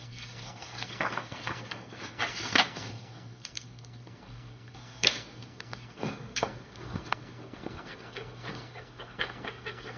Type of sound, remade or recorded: remade